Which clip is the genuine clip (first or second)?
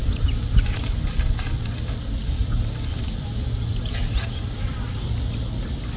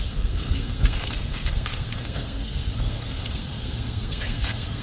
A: first